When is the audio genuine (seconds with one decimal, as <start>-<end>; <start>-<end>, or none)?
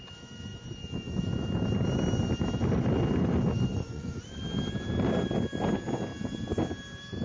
0.0-3.7; 4.4-7.2